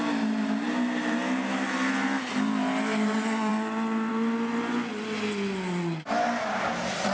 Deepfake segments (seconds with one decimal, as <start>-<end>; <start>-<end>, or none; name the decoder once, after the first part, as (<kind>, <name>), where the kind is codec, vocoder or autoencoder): none

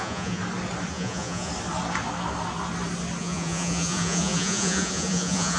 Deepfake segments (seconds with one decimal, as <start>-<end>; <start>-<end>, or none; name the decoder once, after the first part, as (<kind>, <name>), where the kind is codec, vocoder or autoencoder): 0.0-0.4 (vocoder, Vocos); 0.9-1.5; 3.2-5.6

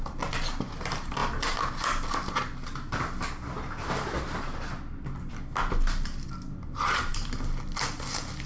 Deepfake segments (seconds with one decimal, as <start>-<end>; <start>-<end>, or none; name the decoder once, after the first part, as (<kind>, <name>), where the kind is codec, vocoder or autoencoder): none